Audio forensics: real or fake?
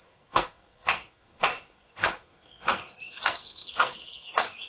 fake